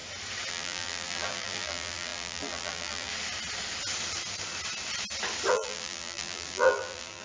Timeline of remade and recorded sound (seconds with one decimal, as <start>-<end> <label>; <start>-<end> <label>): 0.0-0.5 recorded; 0.5-3.1 remade; 3.1-5.5 recorded; 5.5-7.2 remade